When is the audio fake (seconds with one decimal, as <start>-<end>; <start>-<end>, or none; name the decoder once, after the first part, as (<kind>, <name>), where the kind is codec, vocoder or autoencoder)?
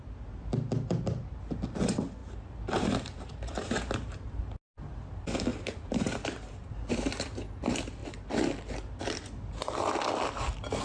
2.2-4.7 (vocoder, BigVGAN v2); 5.5-6.9